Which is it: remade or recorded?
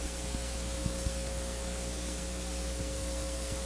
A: remade